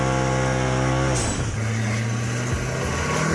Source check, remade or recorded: recorded